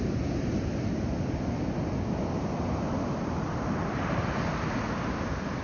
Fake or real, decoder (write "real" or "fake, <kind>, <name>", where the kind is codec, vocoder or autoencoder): real